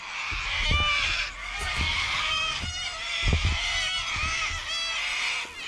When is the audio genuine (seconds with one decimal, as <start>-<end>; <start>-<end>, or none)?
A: 0.0-1.4; 2.6-5.7